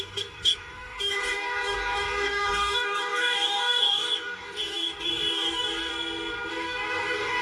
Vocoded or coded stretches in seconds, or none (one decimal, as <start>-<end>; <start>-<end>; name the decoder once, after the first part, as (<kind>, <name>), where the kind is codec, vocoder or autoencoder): 0.0-5.9 (codec, DAC); 6.5-7.4